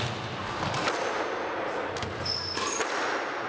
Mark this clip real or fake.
real